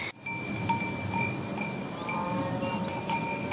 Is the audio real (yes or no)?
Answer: yes